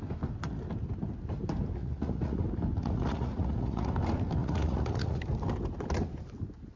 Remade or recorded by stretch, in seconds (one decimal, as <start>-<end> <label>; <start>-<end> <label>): 0.0-1.8 recorded; 1.8-2.4 remade; 2.4-2.8 recorded; 2.8-3.9 remade; 3.9-4.4 recorded; 4.4-5.2 remade; 5.2-6.8 recorded